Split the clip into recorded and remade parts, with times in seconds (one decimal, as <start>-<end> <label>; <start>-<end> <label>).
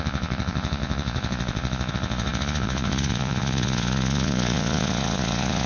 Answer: 0.0-5.7 remade